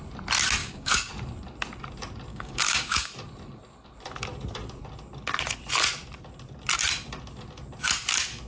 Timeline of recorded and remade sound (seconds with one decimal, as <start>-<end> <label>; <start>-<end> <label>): 0.0-0.6 recorded; 0.6-1.1 remade; 1.1-2.3 recorded; 2.3-3.1 remade; 3.1-8.5 recorded